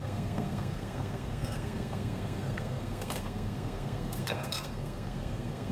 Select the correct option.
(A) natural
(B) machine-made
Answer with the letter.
B